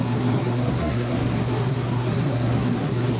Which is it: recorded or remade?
remade